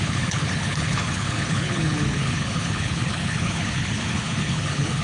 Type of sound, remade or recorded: remade